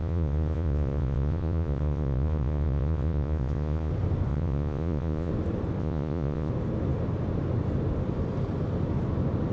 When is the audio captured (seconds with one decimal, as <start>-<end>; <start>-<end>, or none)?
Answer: 3.9-4.3; 5.3-5.8; 6.5-9.5